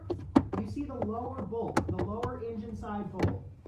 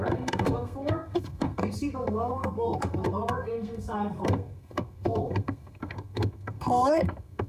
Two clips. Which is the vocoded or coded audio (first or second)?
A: second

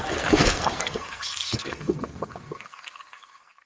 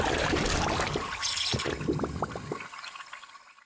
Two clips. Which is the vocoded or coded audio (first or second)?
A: first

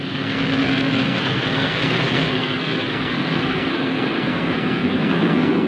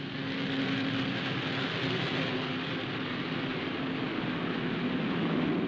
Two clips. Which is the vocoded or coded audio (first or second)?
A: first